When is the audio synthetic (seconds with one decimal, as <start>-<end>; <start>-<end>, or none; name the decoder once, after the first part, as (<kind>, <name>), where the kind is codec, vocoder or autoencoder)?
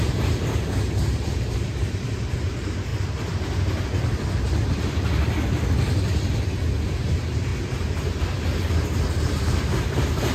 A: 0.0-2.9 (vocoder, BigVGAN v2); 7.0-10.3